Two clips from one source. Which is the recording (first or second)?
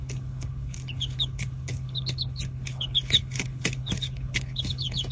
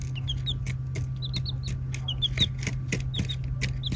second